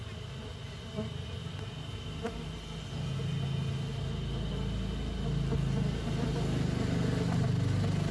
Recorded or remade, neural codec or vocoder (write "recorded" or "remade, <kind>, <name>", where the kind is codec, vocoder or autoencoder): recorded